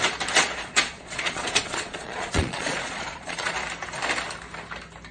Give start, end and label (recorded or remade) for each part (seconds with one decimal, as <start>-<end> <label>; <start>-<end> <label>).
0.0-0.4 recorded; 0.4-3.5 remade; 3.5-5.1 recorded